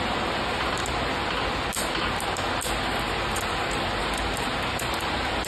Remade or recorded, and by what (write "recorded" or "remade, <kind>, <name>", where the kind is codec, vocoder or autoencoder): recorded